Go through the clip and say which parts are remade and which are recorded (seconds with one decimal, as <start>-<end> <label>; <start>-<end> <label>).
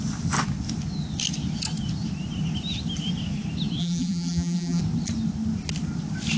0.0-3.8 recorded; 3.8-4.8 remade; 4.8-6.4 recorded